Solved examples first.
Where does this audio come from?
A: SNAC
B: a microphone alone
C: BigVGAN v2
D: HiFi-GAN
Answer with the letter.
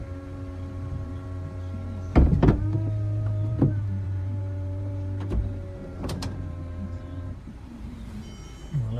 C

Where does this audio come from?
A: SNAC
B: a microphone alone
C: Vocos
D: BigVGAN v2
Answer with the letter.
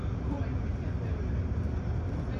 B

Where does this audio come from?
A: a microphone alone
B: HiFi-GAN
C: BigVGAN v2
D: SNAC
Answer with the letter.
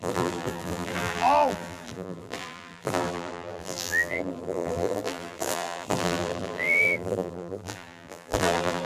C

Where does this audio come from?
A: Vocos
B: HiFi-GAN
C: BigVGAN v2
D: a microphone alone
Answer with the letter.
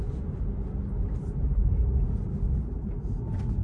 D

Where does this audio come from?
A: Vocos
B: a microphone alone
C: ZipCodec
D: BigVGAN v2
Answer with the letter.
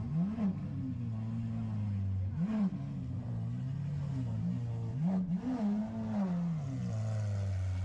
B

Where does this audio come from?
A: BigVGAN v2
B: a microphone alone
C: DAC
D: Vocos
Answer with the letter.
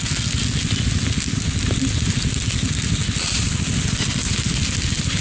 B